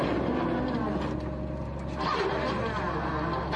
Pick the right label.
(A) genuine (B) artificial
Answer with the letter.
A